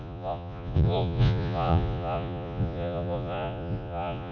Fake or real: fake